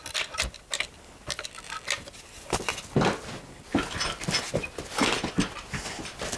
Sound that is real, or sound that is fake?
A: real